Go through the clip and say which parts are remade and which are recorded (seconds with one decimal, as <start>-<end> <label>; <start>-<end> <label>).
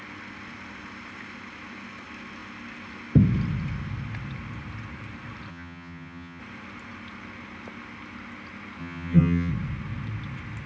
0.0-5.5 recorded; 5.5-6.4 remade; 6.4-8.8 recorded; 8.8-9.5 remade; 9.5-10.7 recorded